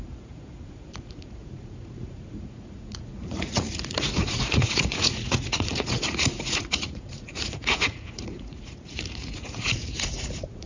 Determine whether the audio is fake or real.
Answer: fake